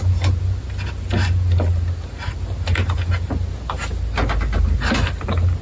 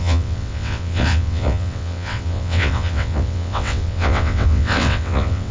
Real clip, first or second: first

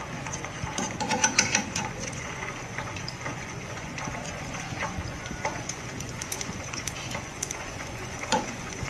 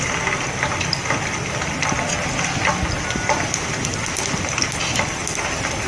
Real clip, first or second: second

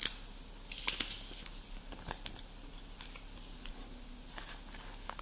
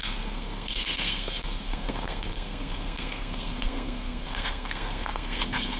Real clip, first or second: first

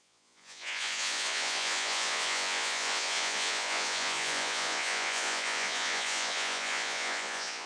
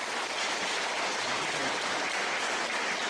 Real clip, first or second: second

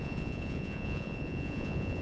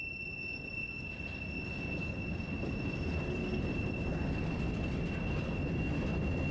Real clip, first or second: second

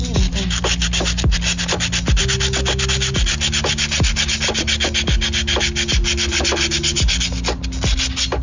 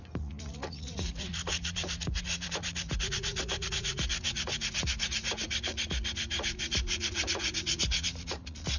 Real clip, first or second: first